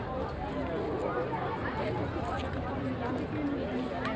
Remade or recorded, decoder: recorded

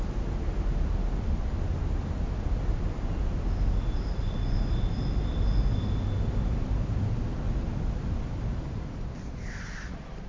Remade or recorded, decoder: recorded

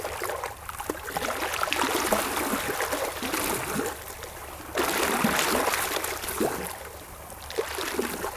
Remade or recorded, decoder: recorded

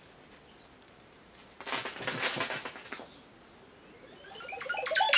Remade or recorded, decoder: recorded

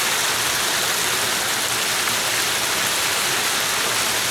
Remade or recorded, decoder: recorded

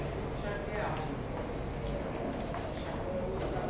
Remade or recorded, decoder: recorded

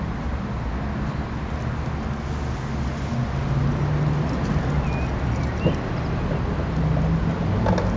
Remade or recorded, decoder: recorded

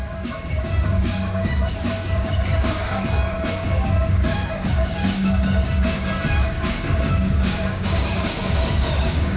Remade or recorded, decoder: remade, codec, DAC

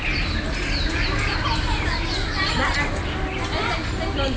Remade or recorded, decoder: recorded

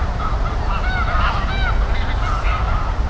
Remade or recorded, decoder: recorded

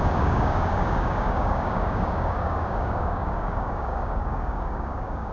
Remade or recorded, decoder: remade, codec, DAC